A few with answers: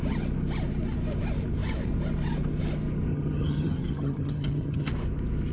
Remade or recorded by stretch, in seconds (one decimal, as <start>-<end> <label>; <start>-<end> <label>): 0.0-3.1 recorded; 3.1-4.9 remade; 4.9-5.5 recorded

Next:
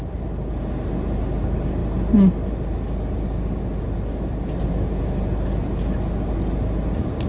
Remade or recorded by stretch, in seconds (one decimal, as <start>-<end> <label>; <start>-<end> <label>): 0.0-7.3 recorded

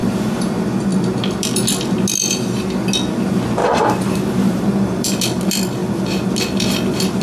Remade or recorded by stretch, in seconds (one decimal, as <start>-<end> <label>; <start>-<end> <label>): 0.0-0.5 remade; 0.5-3.6 recorded; 3.6-5.2 remade; 5.2-7.2 recorded

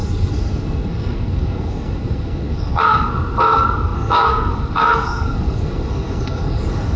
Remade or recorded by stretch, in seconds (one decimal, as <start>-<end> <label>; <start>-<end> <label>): 0.0-7.0 remade

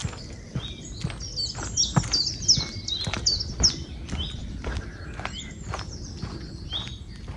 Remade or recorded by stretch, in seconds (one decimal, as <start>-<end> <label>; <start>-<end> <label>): 0.0-7.4 recorded

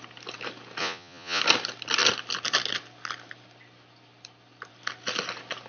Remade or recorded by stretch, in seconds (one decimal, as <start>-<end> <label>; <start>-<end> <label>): 0.0-0.8 recorded; 0.8-1.4 remade; 1.4-5.7 recorded